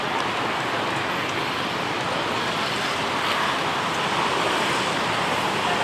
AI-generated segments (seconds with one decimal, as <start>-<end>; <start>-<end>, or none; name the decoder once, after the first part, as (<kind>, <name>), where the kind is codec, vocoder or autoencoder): none